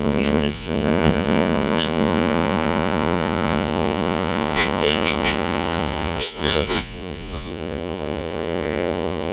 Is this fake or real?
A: fake